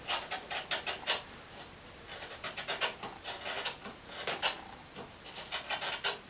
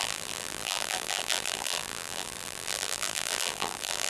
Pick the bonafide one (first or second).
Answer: first